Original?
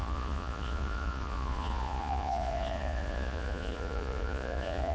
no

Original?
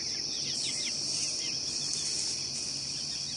yes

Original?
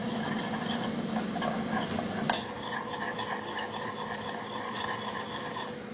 yes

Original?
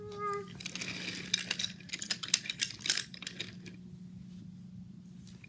yes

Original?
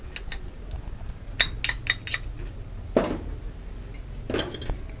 yes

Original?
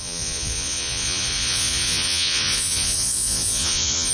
no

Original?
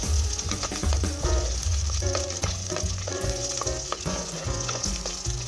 no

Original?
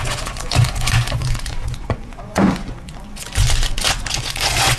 no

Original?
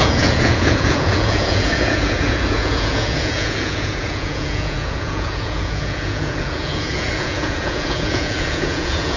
no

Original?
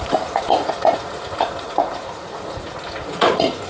no